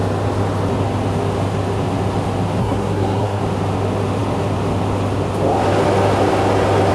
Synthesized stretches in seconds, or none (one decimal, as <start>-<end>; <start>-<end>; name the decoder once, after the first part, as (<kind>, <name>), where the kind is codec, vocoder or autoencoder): 2.6-3.4 (codec, SNAC)